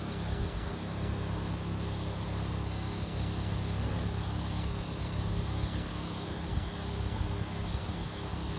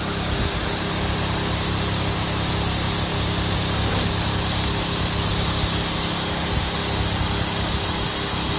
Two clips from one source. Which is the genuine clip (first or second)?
second